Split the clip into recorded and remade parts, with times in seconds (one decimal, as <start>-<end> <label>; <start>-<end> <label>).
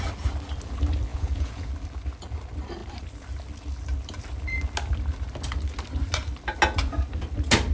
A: 0.0-1.1 recorded; 1.1-1.7 remade; 1.7-7.7 recorded